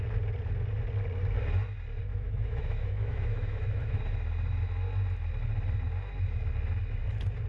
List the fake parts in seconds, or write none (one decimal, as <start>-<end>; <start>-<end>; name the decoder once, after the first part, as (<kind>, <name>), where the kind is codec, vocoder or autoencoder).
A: 2.1-4.0 (autoencoder, DAC-VAE)